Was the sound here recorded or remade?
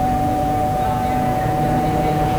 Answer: remade